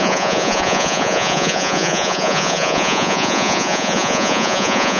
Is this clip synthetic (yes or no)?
yes